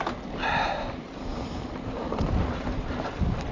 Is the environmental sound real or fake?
real